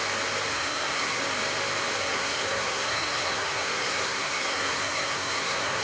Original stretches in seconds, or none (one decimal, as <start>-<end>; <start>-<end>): 0.0-0.5; 1.2-2.0